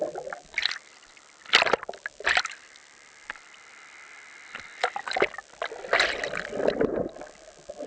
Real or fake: real